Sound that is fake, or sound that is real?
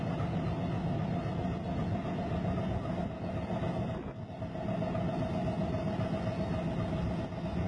real